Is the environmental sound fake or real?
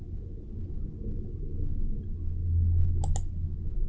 real